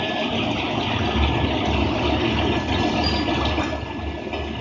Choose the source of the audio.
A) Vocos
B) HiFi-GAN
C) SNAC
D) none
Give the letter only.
D